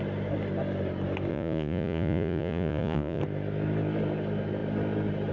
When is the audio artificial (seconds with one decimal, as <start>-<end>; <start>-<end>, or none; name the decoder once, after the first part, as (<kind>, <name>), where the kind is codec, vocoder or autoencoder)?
1.3-3.2 (vocoder, Vocos)